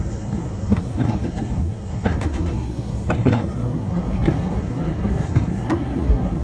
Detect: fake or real fake